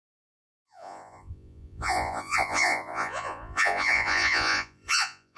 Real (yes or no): no